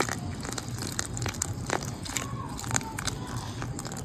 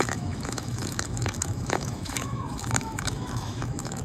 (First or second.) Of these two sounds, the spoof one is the second